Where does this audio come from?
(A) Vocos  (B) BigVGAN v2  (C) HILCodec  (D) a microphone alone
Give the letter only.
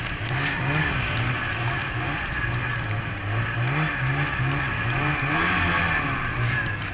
B